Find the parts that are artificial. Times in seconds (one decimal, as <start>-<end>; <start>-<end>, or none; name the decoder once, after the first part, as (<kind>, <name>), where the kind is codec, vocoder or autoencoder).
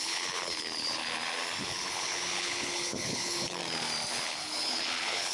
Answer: 0.0-1.0 (codec, HILCodec); 1.6-3.6; 4.1-5.3